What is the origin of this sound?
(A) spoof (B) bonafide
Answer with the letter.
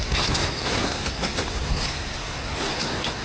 A